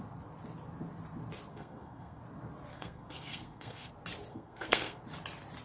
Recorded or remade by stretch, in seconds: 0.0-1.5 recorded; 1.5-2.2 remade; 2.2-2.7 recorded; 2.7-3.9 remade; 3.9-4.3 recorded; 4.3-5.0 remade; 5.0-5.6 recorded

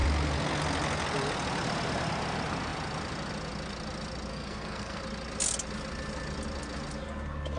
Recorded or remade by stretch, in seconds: 0.0-4.3 recorded; 4.3-5.0 remade; 5.0-7.6 recorded

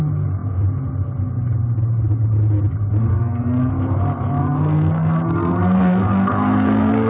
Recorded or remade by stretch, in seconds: 0.0-3.1 recorded; 3.1-3.7 remade; 3.7-4.4 recorded; 4.4-7.1 remade

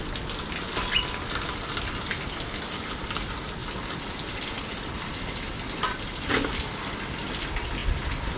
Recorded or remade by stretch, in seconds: 0.0-8.4 recorded

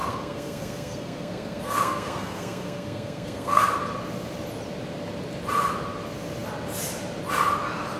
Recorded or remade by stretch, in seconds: 0.0-3.6 remade; 3.6-8.0 recorded